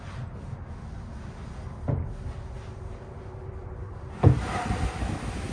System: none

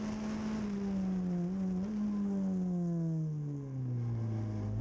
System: none